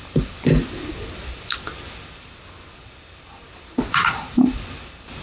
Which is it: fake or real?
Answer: real